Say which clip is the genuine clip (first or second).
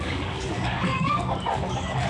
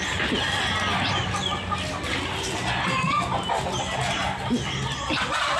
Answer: second